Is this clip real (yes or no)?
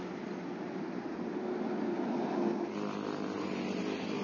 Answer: yes